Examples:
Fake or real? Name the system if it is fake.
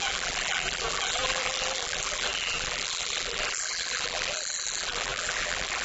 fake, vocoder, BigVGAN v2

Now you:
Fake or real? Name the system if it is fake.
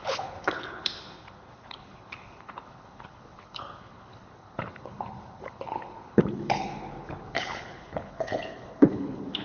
fake, codec, HILCodec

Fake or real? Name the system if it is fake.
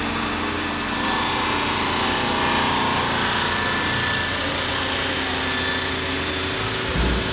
real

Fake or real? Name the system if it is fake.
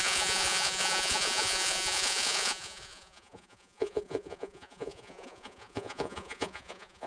fake, vocoder, Vocos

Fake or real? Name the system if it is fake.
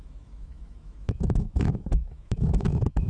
fake, autoencoder, DAC-VAE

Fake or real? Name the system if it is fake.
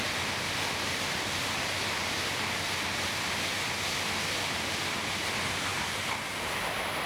real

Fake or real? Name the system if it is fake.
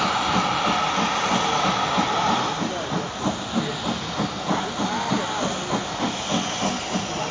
real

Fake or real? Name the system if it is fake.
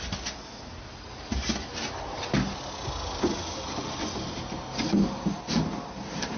real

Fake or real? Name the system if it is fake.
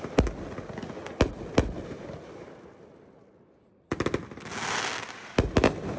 real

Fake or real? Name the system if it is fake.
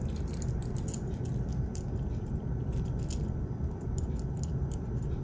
real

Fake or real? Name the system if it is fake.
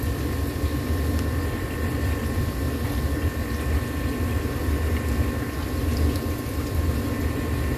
real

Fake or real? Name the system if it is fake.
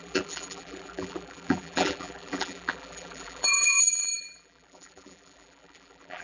fake, vocoder, BigVGAN v2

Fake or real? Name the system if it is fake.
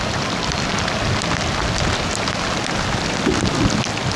real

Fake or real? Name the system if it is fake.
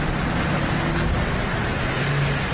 real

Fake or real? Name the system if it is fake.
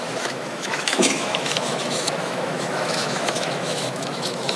fake, autoencoder, DAC-VAE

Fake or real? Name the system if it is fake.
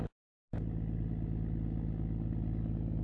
real